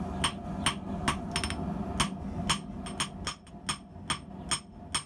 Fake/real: real